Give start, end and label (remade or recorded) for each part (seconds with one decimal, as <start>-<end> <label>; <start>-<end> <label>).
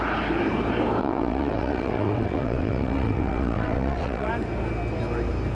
0.0-1.0 recorded; 1.0-4.3 remade; 4.3-5.5 recorded